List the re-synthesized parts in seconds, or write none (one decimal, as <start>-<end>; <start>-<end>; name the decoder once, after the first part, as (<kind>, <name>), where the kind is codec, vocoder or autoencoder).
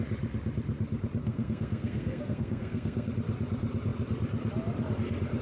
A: 1.2-3.1 (codec, SNAC)